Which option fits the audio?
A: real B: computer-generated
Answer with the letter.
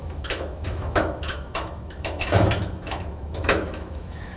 B